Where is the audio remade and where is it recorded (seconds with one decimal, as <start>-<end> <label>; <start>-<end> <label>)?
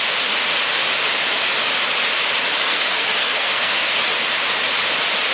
0.0-2.6 recorded; 2.6-4.0 remade; 4.0-5.3 recorded